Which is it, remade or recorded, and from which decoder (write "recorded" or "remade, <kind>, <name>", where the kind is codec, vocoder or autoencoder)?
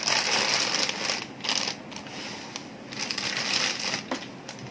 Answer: recorded